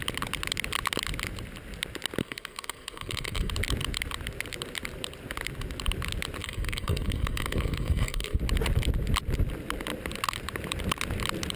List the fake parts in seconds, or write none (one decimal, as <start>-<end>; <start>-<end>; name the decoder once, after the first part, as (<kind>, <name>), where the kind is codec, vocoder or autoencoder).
2.2-3.5 (codec, SNAC); 6.4-8.4